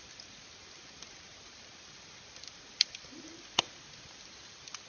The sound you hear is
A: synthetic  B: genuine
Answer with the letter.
A